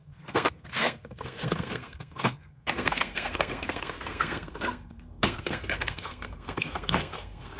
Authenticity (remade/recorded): remade